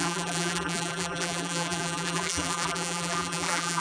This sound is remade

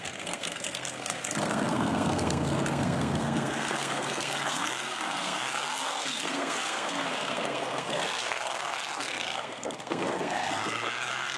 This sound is remade